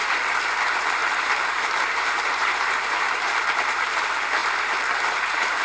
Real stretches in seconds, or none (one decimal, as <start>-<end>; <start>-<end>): 0.0-0.6